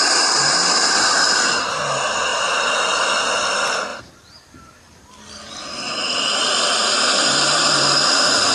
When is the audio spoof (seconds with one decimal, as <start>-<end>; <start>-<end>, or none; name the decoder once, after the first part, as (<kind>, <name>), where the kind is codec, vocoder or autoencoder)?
2.3-3.2 (vocoder, BigVGAN v2); 3.9-8.0